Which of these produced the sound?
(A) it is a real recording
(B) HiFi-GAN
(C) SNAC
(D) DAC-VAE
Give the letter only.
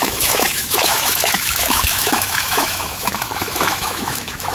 D